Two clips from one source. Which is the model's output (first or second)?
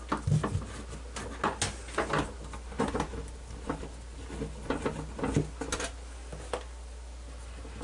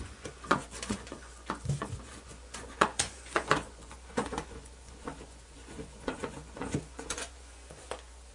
second